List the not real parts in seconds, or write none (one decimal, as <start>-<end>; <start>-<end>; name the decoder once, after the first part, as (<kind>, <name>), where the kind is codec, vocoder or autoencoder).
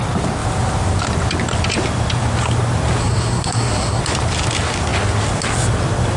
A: 3.0-4.0 (codec, SNAC)